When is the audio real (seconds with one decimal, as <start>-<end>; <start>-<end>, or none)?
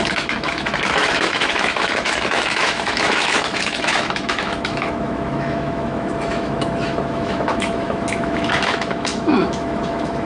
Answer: none